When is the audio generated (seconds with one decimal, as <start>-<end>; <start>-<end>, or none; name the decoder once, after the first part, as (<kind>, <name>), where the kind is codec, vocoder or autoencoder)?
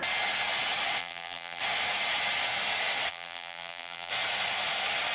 1.0-1.6 (vocoder, BigVGAN v2); 3.1-4.1